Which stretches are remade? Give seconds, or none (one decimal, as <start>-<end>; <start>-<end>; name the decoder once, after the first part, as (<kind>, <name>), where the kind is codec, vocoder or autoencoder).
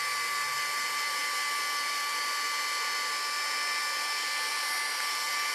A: none